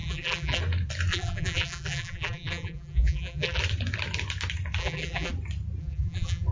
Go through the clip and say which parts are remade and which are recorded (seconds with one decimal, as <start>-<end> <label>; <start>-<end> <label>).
0.0-0.6 remade; 0.6-1.1 recorded; 1.1-3.6 remade; 3.6-4.8 recorded; 4.8-5.3 remade; 5.3-5.8 recorded; 5.8-6.5 remade